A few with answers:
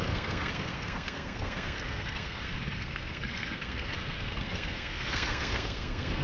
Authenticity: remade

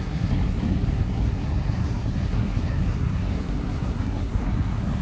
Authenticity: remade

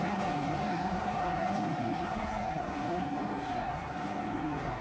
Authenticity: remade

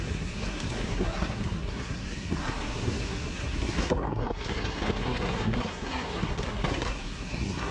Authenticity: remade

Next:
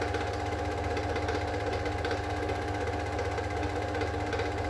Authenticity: recorded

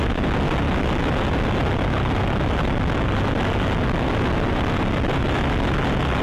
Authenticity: recorded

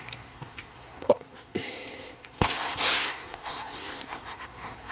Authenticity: remade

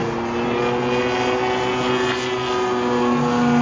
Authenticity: recorded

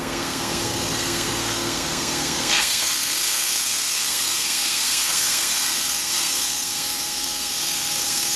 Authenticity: remade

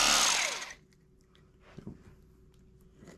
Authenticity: recorded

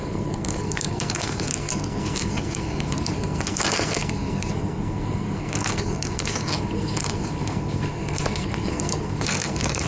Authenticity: remade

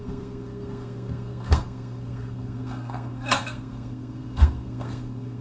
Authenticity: remade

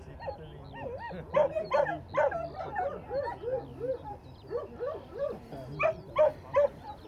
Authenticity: recorded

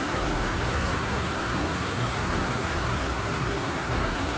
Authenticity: remade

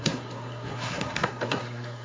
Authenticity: remade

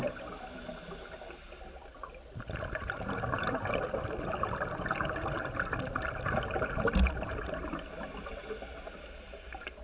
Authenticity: recorded